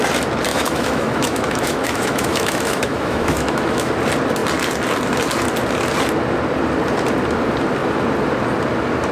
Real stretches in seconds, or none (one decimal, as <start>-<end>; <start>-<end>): 0.0-0.5; 3.9-9.1